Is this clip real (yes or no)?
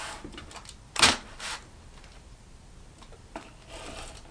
yes